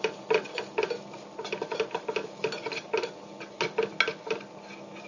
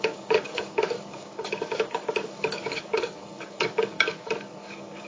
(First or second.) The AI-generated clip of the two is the second